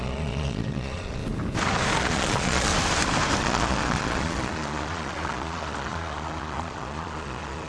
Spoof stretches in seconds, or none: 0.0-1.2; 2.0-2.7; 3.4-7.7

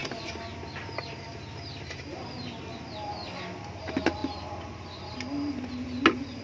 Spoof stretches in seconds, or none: none

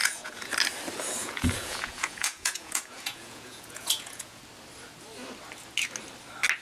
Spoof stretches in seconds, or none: 0.0-0.5; 1.2-4.4

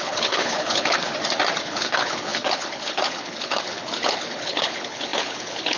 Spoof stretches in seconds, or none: 0.0-1.1; 1.6-5.8

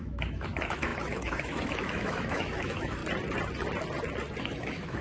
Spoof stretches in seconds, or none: 0.0-3.0; 4.4-5.0

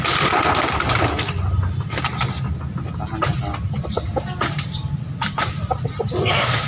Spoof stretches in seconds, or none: none